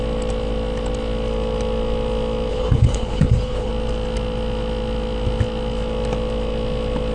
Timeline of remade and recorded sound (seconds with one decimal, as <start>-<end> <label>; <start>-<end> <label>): 0.0-2.5 recorded; 2.5-3.7 remade; 3.7-7.1 recorded

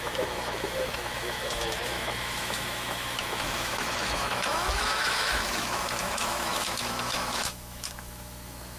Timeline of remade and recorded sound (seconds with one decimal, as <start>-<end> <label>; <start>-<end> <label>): 0.0-8.8 remade

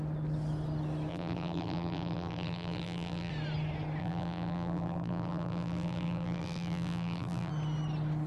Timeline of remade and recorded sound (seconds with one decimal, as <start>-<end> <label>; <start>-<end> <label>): 0.0-1.1 recorded; 1.1-3.3 remade; 3.3-4.0 recorded; 4.0-7.5 remade; 7.5-8.3 recorded

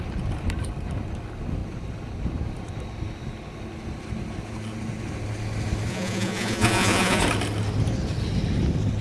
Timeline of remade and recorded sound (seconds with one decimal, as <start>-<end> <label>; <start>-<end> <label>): 0.0-5.9 recorded; 5.9-7.2 remade; 7.2-9.0 recorded

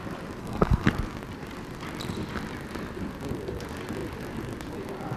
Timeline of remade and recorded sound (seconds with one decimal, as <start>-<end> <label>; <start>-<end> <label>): 0.0-0.4 recorded; 0.4-0.9 remade; 0.9-5.2 recorded

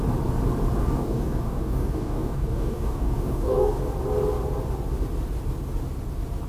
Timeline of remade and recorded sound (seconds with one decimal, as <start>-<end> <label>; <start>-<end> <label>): 0.0-0.8 recorded; 0.8-3.8 remade; 3.8-6.5 recorded

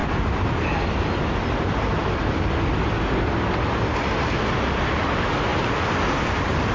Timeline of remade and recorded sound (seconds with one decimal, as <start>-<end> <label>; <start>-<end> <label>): 0.0-1.6 recorded; 1.6-2.9 remade; 2.9-4.9 recorded; 4.9-5.5 remade; 5.5-6.2 recorded; 6.2-6.7 remade

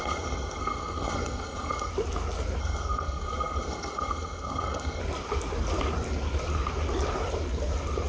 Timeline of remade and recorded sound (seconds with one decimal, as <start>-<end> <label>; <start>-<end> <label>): 0.0-1.9 remade; 1.9-2.6 recorded; 2.6-5.0 remade; 5.0-8.1 recorded